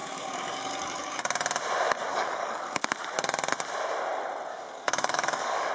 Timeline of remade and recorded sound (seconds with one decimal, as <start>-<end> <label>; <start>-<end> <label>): 0.0-1.2 remade; 1.2-2.1 recorded; 2.1-2.9 remade; 2.9-4.5 recorded; 4.5-5.7 remade